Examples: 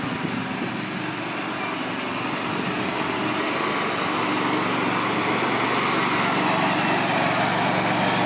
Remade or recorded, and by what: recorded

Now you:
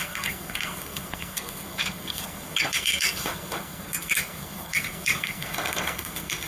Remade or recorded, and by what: remade, codec, SNAC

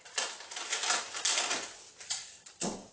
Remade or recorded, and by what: recorded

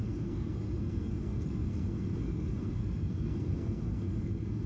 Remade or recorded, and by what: remade, codec, SNAC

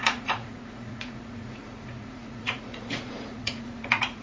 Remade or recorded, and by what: remade, vocoder, Vocos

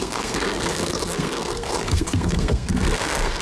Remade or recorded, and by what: remade, codec, SNAC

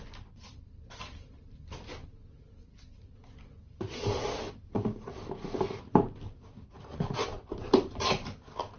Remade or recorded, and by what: recorded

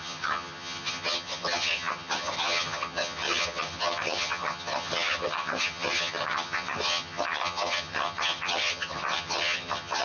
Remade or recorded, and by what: remade, vocoder, HiFi-GAN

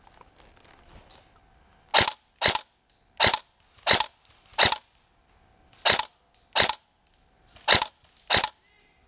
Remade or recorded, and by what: recorded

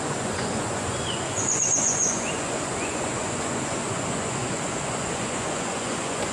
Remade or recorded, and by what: remade, vocoder, Vocos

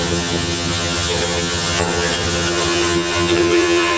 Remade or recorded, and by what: remade, vocoder, HiFi-GAN